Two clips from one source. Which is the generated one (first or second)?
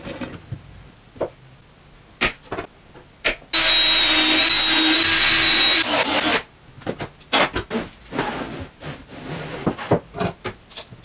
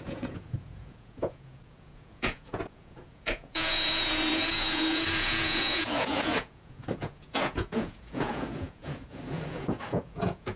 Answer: second